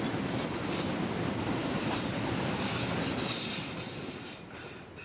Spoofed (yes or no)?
no